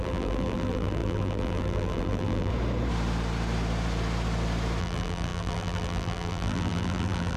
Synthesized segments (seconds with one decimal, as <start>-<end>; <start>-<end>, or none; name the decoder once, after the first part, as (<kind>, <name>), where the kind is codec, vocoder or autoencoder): 0.0-2.5 (vocoder, BigVGAN v2); 4.8-7.4